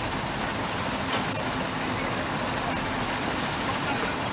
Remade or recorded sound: recorded